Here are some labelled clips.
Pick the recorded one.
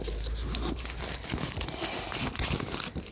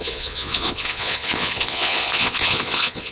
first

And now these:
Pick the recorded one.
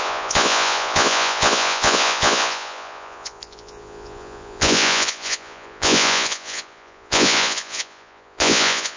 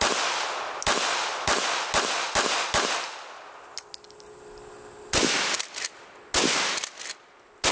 second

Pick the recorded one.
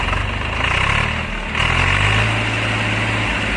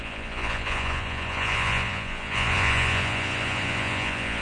first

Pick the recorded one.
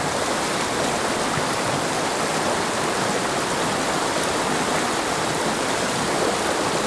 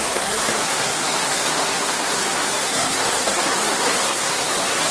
first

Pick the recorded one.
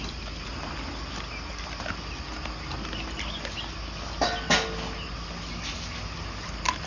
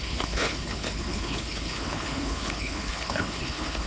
first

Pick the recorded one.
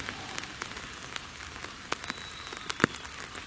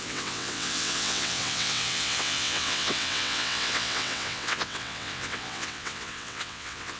first